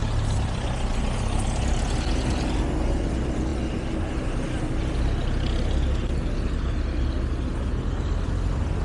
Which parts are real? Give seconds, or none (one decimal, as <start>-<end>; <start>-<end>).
0.0-8.8